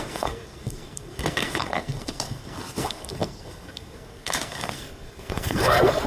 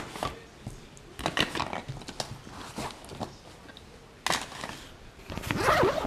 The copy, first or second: first